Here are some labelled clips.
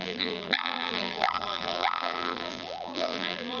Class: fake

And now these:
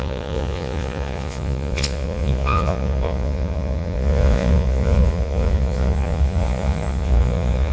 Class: fake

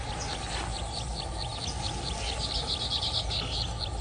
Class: real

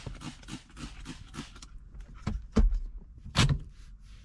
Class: real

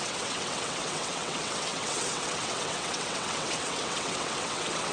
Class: fake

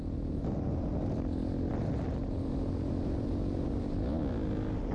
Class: real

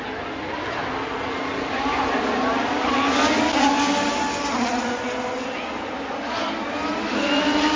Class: real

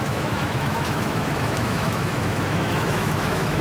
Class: fake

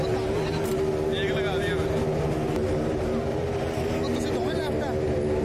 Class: real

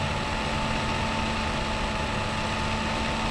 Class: real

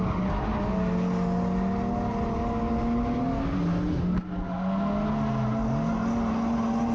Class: real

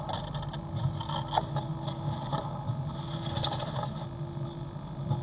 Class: real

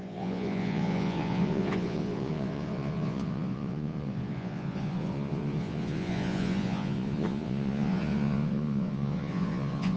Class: fake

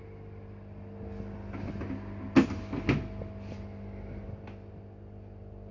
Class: real